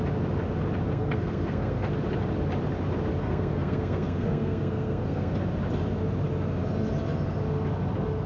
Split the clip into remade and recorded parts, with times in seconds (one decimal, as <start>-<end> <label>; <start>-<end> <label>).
0.0-0.9 recorded; 0.9-1.9 remade; 1.9-3.2 recorded; 3.2-5.3 remade; 5.3-8.3 recorded